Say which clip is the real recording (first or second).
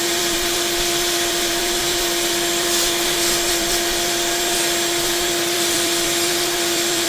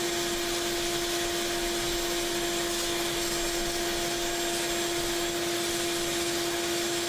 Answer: second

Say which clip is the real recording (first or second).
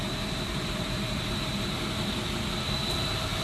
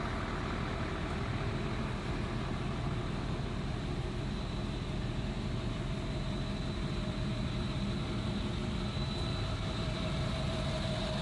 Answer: second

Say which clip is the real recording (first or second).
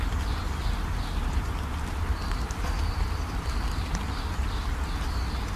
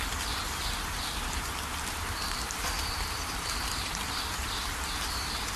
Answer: first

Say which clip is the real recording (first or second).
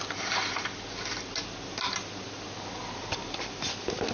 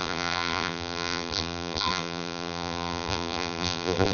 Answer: first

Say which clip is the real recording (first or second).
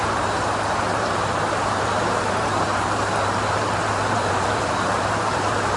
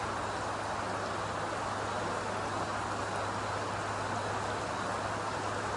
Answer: second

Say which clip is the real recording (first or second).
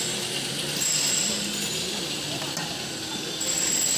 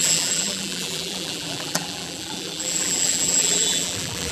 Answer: first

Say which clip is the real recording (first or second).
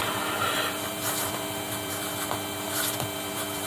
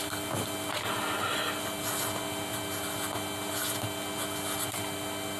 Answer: second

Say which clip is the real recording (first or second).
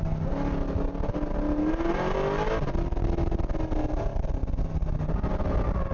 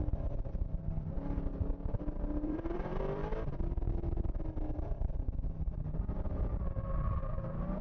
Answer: first